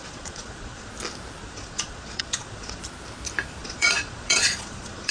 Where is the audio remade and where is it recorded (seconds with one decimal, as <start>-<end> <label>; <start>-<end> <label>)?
0.0-0.9 remade; 0.9-1.4 recorded; 1.4-2.8 remade; 2.8-3.6 recorded; 3.6-5.1 remade